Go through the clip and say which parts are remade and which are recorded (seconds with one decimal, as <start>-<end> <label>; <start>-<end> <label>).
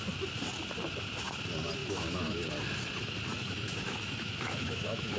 0.0-1.8 recorded; 1.8-2.5 remade; 2.5-3.3 recorded; 3.3-5.2 remade